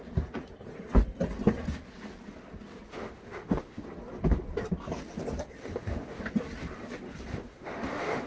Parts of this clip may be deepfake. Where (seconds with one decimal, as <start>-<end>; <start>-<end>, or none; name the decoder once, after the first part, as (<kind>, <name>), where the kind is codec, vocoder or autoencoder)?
2.9-3.8 (autoencoder, DAC-VAE); 5.6-6.2; 7.3-8.3

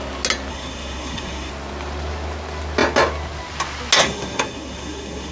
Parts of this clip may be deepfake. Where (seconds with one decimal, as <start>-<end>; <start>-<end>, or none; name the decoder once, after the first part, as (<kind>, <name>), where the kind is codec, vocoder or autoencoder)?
0.5-1.5 (codec, SNAC); 4.0-5.3

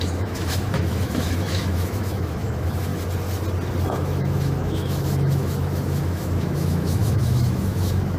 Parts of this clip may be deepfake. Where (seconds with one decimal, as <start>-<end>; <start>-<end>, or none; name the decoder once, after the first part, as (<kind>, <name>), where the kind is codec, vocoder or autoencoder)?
0.0-2.9 (autoencoder, DAC-VAE); 3.9-8.2

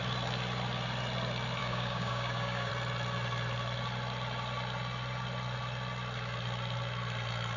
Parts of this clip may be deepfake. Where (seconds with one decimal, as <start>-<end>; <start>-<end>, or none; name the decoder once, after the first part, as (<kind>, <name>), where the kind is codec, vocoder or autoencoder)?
1.6-2.7 (codec, DAC)

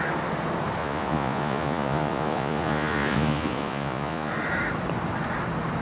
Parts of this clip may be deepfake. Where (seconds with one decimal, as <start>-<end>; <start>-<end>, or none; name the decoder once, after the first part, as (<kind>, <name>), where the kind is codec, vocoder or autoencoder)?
0.8-4.3 (vocoder, Vocos)

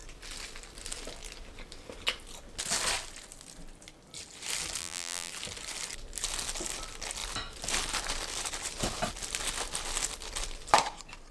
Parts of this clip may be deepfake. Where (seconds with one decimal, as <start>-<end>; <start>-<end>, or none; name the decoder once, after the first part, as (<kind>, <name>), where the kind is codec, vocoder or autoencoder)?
4.8-5.3 (vocoder, BigVGAN v2)

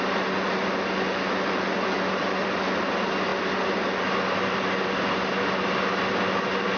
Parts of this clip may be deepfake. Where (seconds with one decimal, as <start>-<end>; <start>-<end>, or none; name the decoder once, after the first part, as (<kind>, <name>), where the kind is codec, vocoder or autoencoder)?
none